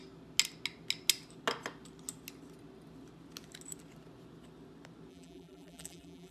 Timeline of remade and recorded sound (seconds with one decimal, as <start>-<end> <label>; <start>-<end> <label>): 0.0-5.1 recorded; 5.1-6.3 remade